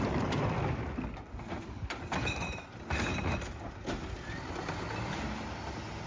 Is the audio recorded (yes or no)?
yes